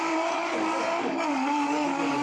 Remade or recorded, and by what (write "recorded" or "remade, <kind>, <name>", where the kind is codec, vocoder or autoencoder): remade, codec, DAC